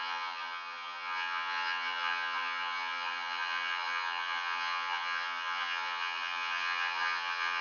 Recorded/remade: remade